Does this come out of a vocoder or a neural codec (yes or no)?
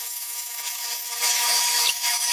yes